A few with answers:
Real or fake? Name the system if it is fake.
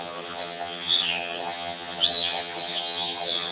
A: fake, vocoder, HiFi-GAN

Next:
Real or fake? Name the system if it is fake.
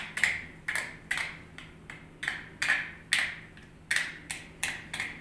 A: real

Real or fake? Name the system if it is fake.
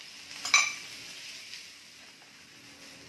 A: real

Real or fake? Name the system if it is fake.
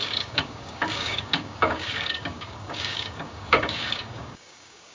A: fake, codec, DAC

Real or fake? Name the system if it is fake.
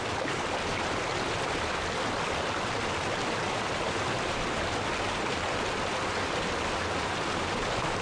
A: real